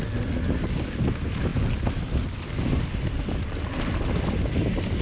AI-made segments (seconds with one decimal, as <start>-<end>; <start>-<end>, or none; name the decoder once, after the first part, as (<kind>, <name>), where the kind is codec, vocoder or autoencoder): none